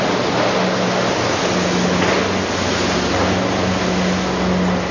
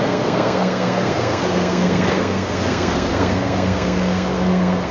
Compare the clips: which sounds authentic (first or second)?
first